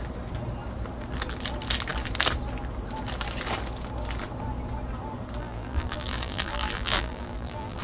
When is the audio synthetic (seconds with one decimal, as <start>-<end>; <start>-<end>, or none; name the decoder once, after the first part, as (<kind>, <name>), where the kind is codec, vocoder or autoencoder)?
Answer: 5.4-7.8 (vocoder, BigVGAN v2)